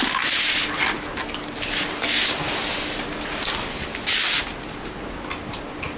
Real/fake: real